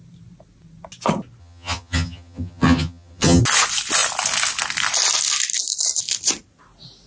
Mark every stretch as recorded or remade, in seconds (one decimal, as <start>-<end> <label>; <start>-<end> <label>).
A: 0.0-1.4 recorded; 1.4-3.4 remade; 3.4-7.1 recorded